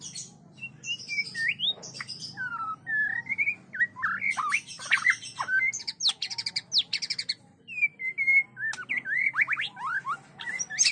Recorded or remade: recorded